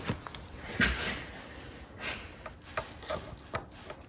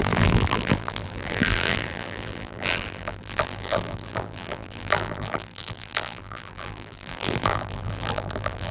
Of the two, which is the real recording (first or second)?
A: first